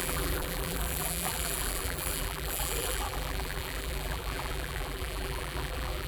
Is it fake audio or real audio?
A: fake